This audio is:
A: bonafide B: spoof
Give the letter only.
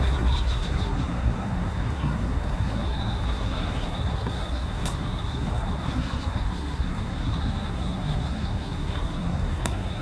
B